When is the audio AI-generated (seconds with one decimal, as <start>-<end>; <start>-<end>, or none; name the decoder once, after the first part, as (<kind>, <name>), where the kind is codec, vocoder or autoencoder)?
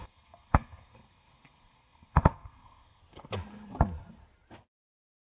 0.0-3.0 (codec, SNAC)